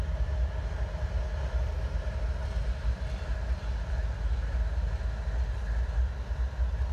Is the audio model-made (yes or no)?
no